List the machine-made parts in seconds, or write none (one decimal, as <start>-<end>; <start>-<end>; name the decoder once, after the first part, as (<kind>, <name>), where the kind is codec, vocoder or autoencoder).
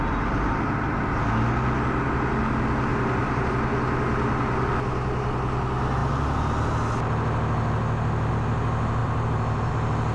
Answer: 2.9-3.5 (vocoder, BigVGAN v2); 9.0-9.7